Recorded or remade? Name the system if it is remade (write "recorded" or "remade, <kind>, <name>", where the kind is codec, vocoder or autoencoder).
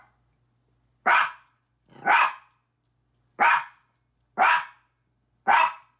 recorded